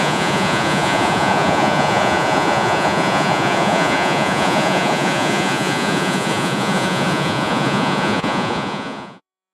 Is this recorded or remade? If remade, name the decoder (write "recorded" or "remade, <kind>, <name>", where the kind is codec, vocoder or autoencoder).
remade, vocoder, Vocos